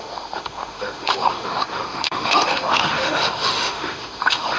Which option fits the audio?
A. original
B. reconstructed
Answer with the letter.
B